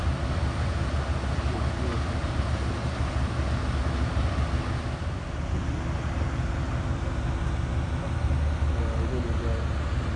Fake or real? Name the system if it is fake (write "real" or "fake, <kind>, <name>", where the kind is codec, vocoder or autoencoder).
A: real